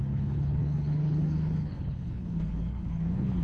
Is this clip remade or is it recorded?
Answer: remade